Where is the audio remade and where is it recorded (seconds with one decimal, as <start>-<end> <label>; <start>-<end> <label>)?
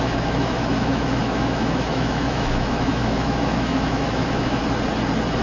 0.0-4.6 remade; 4.6-5.4 recorded